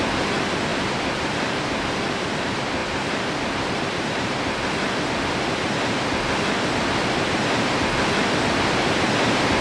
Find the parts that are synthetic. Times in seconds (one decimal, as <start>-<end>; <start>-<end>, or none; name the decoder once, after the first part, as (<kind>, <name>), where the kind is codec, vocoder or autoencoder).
0.7-1.9 (vocoder, BigVGAN v2); 2.8-5.3